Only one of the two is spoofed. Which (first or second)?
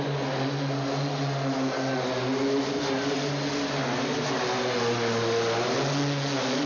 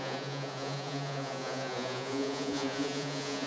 second